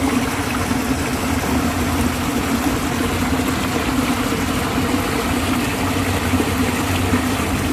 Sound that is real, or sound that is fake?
real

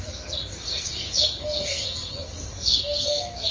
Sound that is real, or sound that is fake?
fake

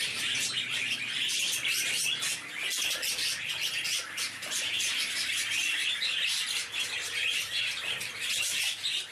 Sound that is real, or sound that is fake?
real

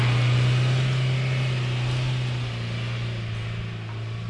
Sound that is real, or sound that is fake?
real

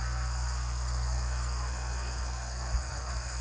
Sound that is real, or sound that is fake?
fake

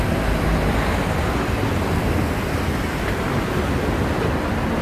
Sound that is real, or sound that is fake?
real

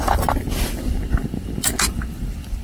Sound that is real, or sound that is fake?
real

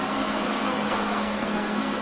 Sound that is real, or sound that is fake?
fake